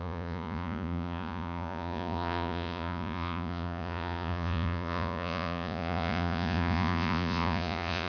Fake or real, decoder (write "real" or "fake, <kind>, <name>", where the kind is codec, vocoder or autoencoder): fake, vocoder, Vocos